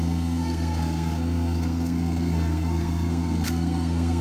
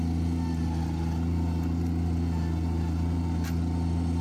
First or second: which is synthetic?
first